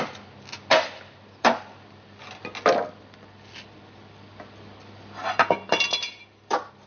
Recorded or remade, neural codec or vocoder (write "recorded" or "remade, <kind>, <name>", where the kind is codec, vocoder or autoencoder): recorded